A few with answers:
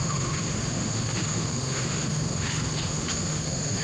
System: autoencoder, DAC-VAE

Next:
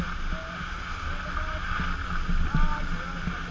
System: none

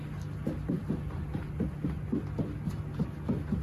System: none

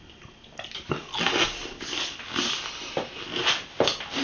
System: none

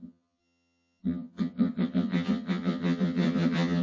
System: vocoder, HiFi-GAN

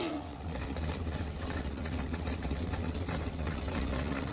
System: vocoder, WaveNeXt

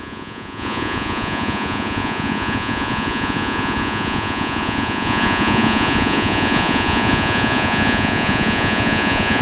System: vocoder, Vocos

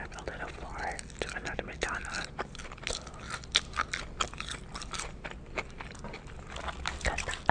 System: none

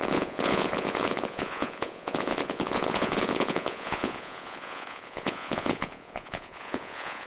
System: vocoder, Vocos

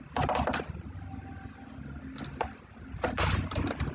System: none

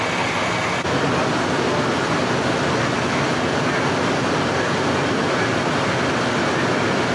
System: none